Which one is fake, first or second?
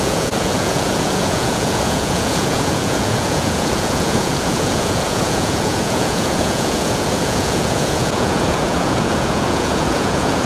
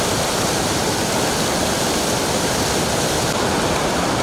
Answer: first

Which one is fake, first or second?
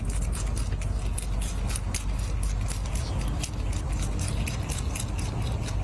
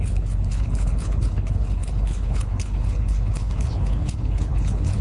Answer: second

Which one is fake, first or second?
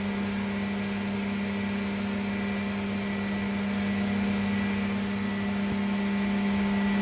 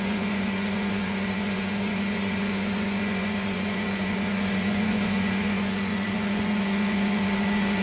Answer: second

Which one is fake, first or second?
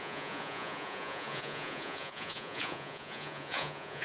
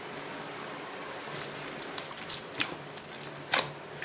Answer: first